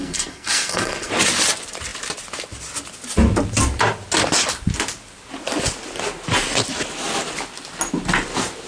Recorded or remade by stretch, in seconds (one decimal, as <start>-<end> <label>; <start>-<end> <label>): 0.0-1.1 remade; 1.1-8.7 recorded